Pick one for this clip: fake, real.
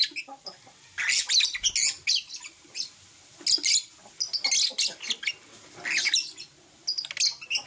real